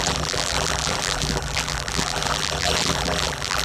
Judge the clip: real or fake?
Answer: fake